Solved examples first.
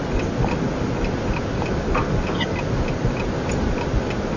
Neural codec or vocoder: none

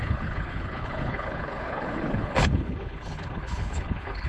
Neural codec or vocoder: codec, HILCodec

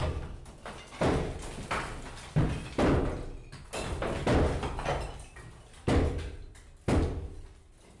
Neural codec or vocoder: none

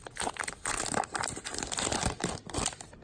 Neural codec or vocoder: none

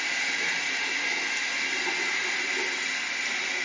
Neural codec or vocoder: none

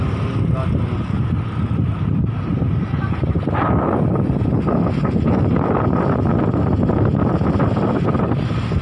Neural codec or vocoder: none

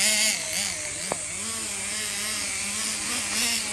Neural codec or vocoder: none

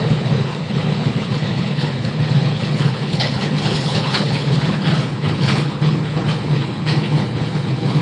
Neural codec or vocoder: codec, HILCodec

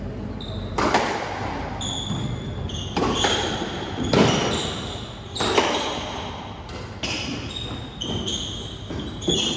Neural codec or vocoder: none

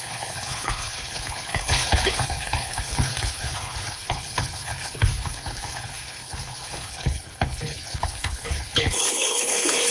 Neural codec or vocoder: codec, HILCodec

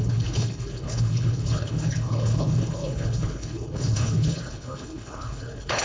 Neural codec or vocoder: codec, HILCodec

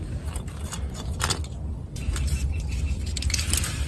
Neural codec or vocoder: none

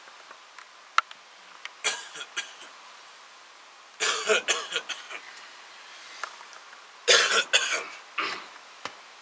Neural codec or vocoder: none